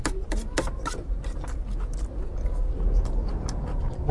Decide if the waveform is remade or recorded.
recorded